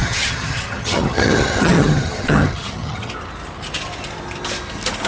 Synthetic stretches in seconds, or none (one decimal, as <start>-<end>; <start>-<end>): 0.0-3.1